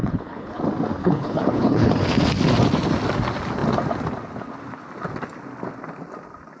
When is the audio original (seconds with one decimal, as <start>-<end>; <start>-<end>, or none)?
0.6-1.0; 1.9-6.6